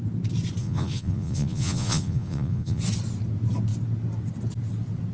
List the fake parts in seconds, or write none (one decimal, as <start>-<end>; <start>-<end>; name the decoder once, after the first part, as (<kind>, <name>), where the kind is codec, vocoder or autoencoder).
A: 0.6-2.8 (vocoder, Vocos)

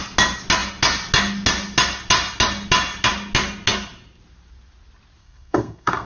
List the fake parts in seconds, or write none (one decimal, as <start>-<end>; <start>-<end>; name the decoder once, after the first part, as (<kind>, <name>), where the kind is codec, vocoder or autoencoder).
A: 5.2-6.1 (codec, SNAC)

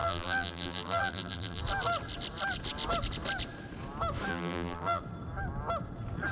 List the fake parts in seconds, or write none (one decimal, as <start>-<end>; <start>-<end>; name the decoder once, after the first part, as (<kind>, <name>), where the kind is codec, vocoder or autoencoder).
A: 0.0-1.6 (vocoder, BigVGAN v2); 4.3-5.0